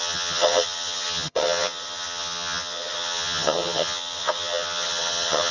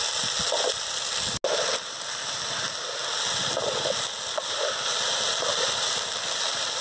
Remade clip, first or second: first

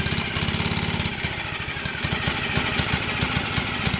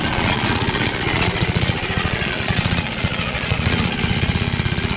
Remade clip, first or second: second